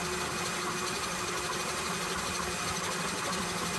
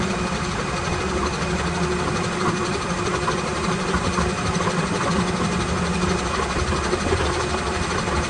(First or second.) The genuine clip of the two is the first